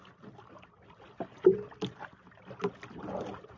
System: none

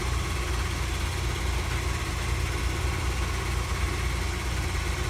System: none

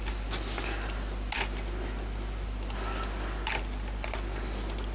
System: none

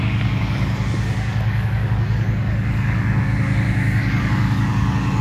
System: codec, DAC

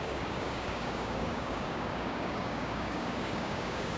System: codec, DAC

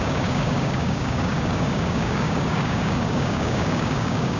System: codec, DAC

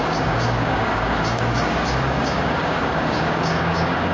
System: codec, DAC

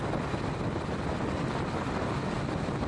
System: none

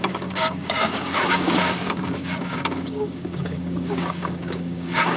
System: codec, DAC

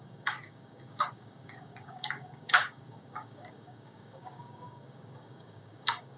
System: codec, DAC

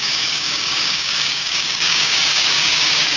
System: codec, DAC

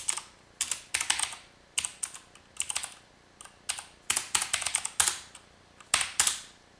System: none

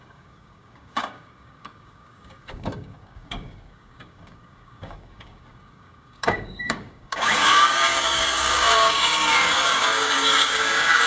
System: codec, DAC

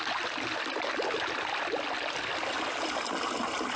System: none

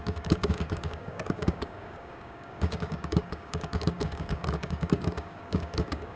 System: codec, DAC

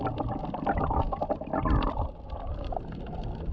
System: none